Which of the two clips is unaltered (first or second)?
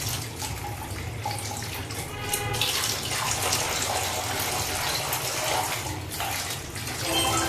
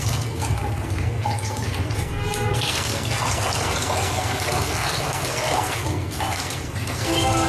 first